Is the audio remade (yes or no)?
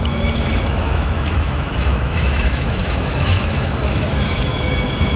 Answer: yes